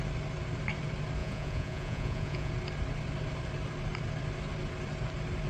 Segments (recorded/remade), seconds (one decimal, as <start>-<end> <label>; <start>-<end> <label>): 0.0-1.2 recorded; 1.2-2.5 remade; 2.5-5.5 recorded